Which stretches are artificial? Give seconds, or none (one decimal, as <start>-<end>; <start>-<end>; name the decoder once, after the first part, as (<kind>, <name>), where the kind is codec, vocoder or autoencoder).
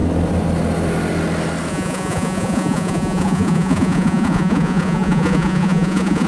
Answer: 1.7-6.3 (vocoder, Vocos)